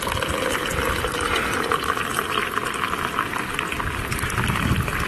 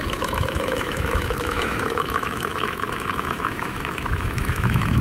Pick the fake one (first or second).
second